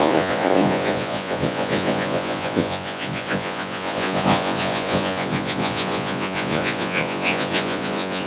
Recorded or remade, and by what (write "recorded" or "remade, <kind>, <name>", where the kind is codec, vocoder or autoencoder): remade, vocoder, Vocos